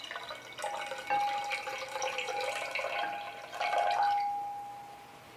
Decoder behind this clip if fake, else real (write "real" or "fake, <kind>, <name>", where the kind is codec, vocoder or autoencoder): real